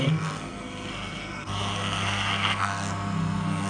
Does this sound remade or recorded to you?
remade